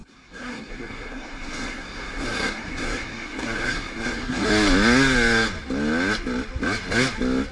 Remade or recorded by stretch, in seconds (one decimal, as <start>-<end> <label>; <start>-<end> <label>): 0.0-4.5 remade; 4.5-7.5 recorded